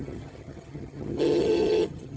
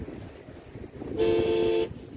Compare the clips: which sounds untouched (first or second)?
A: second